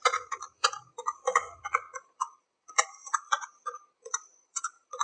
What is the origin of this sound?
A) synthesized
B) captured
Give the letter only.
A